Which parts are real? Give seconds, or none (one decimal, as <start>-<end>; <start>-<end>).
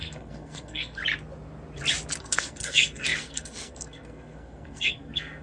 1.0-2.2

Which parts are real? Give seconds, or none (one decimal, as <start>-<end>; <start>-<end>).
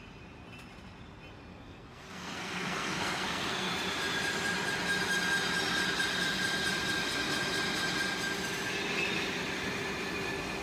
0.0-1.5; 3.7-10.6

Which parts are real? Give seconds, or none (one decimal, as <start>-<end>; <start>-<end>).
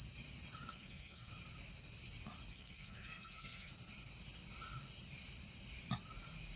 0.0-0.7; 1.3-2.5; 3.7-6.6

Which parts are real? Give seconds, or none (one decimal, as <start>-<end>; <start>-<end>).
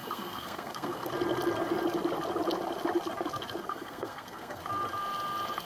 1.1-3.6; 4.6-5.6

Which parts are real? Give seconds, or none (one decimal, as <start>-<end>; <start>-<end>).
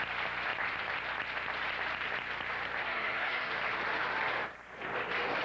0.0-2.8; 3.5-5.4